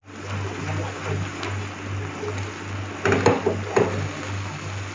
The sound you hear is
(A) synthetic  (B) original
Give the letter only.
B